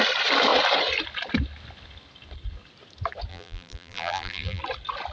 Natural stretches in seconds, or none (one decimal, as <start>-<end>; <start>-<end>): 0.0-3.3; 4.6-5.1